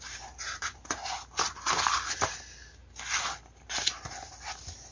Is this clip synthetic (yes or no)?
no